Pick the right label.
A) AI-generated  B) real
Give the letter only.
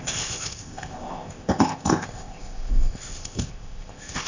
A